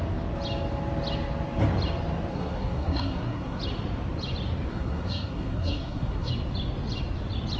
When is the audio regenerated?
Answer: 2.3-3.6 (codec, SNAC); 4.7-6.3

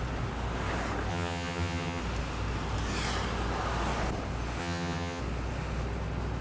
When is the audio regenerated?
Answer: 1.1-2.0 (vocoder, HiFi-GAN); 4.6-5.2

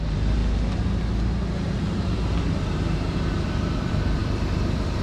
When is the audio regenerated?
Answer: 0.0-0.4 (vocoder, BigVGAN v2); 1.2-5.0

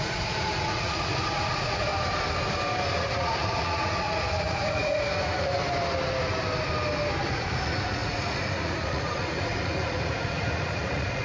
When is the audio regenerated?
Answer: 0.0-1.9 (vocoder, Vocos); 2.9-5.6; 7.2-11.2

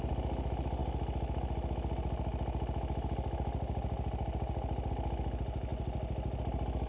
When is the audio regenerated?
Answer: none